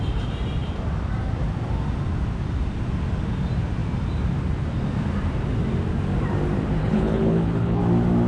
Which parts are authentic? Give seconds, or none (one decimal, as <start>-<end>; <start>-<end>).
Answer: 0.0-6.8; 7.8-8.3